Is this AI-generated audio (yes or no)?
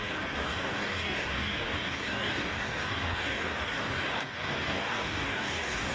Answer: yes